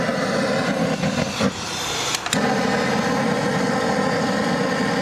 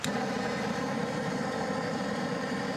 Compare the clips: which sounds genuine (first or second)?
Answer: first